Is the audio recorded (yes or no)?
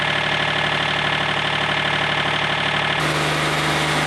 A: yes